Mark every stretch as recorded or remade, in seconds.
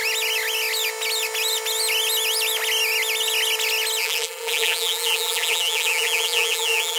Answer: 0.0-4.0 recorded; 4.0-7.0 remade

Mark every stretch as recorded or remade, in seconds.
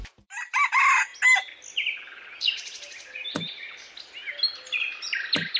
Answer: 0.0-5.6 recorded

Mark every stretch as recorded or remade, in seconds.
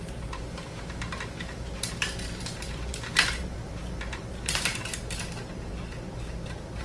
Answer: 0.0-2.9 remade; 2.9-3.4 recorded; 3.4-6.8 remade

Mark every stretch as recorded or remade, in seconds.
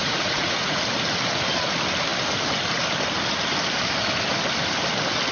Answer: 0.0-0.8 remade; 0.8-5.3 recorded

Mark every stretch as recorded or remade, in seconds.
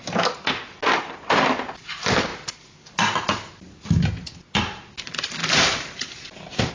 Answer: 0.0-5.4 recorded; 5.4-6.7 remade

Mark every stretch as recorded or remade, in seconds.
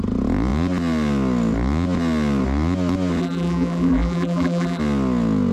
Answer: 0.0-3.2 recorded; 3.2-4.8 remade; 4.8-5.5 recorded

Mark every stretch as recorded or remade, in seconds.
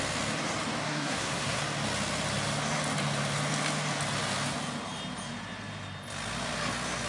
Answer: 0.0-0.8 recorded; 0.8-1.6 remade; 1.6-7.1 recorded